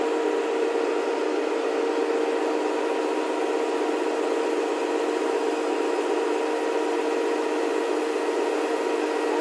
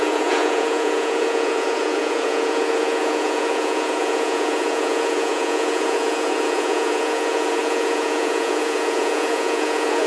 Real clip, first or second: first